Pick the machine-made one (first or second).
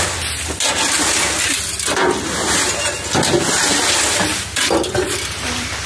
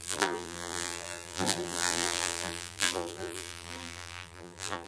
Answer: second